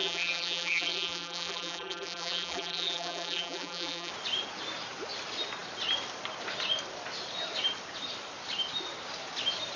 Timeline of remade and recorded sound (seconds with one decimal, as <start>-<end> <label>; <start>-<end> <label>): 0.0-4.1 remade; 4.1-9.8 recorded